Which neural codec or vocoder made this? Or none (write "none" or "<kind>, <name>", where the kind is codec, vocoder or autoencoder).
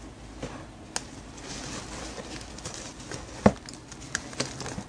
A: none